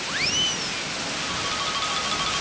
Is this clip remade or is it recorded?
recorded